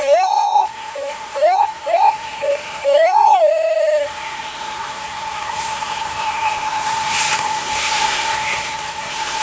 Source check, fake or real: fake